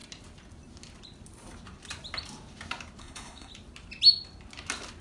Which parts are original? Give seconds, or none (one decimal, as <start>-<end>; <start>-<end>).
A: 0.0-3.0; 3.5-5.0